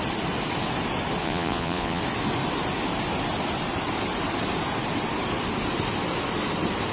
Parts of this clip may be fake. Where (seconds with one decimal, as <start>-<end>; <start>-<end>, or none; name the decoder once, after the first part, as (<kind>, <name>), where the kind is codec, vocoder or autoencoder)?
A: 1.2-2.0 (vocoder, Vocos)